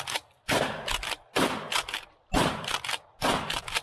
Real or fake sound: real